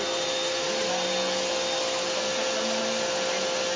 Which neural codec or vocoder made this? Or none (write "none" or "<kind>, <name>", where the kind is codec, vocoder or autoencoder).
none